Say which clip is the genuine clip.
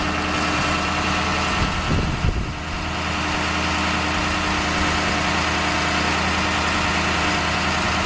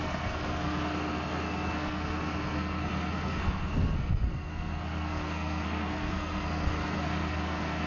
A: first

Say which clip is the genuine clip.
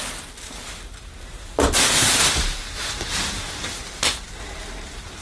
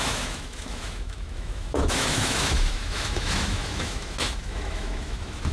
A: first